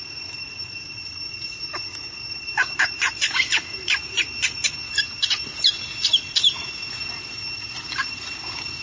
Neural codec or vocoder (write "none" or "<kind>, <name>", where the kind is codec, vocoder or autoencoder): none